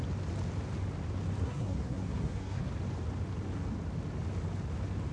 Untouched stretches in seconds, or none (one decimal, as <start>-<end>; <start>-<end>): 0.0-1.4; 2.7-5.1